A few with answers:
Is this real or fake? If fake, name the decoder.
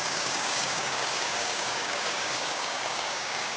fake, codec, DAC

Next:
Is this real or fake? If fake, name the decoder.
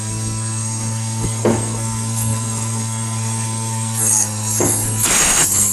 fake, codec, SNAC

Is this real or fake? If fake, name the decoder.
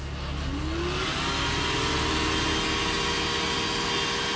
real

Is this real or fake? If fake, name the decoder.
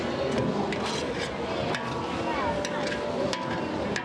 real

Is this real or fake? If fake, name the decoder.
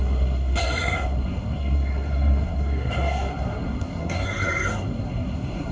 fake, codec, SNAC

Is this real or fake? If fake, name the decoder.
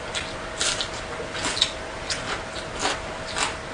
real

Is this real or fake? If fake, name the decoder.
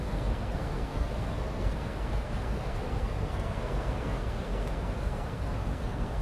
fake, codec, SNAC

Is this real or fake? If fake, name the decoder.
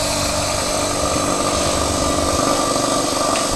real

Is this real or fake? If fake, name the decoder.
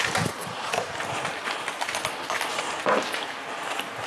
real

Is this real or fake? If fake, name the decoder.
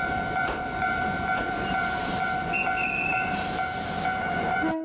fake, vocoder, BigVGAN v2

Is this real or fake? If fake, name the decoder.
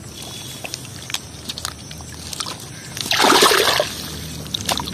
real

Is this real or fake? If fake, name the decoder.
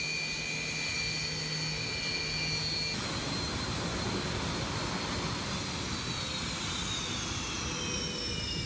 real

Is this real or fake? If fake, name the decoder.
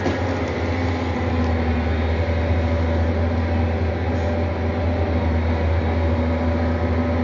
real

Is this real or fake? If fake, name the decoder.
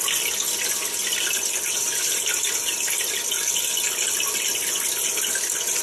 real